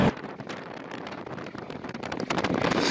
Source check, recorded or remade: remade